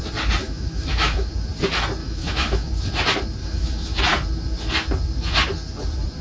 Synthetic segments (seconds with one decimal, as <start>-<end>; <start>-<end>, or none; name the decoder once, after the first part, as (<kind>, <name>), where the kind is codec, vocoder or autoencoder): 0.4-1.3 (autoencoder, DAC-VAE); 2.0-2.7; 3.4-4.0

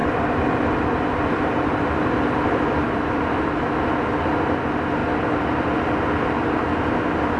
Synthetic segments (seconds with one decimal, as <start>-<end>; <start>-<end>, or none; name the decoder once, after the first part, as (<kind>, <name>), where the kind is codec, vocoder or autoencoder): 0.0-3.4 (vocoder, BigVGAN v2)

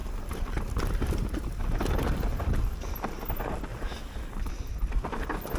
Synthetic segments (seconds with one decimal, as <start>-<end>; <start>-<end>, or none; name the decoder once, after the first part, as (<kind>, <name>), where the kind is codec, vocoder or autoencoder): 0.0-2.9 (vocoder, BigVGAN v2); 3.7-4.5